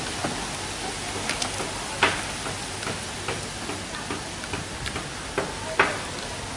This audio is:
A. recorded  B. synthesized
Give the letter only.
A